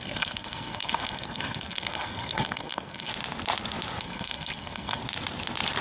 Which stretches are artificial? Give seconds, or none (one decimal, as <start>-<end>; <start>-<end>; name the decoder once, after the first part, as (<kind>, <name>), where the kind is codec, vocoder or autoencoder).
0.0-3.1 (codec, SNAC); 4.0-5.0